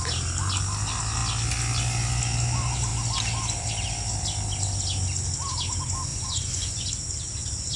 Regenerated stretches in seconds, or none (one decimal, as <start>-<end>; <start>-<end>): 6.1-6.9